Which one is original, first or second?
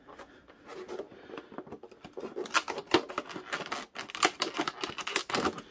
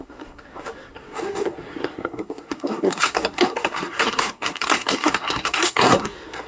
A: first